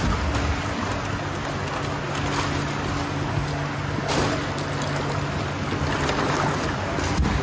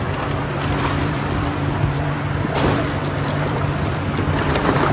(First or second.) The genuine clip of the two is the first